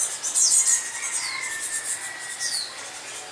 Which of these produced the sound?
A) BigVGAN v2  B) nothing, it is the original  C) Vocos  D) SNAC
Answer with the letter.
B